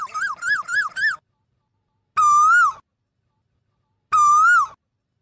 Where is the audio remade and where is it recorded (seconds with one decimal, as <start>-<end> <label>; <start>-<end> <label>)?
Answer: 0.0-5.2 recorded